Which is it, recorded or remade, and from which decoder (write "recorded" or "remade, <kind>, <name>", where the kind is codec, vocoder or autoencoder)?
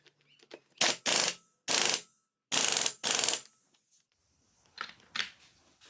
recorded